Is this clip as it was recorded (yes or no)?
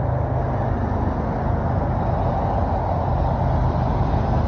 yes